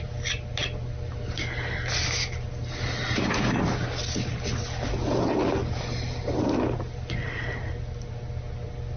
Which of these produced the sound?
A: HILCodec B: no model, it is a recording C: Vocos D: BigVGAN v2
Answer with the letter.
B